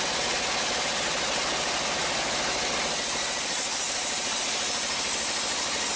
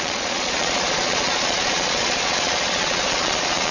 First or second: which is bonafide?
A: first